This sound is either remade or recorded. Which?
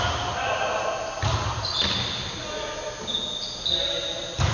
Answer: recorded